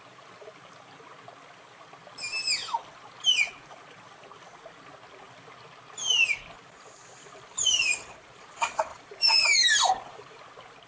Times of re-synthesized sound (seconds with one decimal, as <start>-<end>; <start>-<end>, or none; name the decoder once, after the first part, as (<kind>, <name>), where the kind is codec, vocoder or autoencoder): 8.9-10.4 (vocoder, BigVGAN v2)

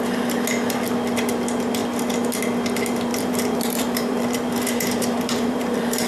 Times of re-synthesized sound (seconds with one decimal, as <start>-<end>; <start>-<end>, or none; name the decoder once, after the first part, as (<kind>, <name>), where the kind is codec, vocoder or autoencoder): 3.1-6.1 (vocoder, BigVGAN v2)

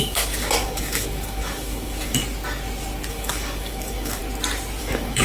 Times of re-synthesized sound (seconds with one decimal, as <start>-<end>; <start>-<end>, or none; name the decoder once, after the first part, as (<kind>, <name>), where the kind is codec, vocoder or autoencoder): 0.0-2.2 (codec, DAC); 3.1-4.2; 4.8-5.2